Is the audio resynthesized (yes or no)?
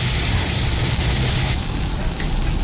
no